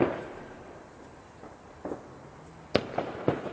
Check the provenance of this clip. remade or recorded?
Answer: recorded